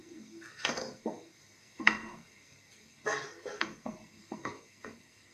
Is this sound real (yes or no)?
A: no